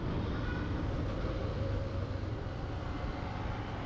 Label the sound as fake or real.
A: real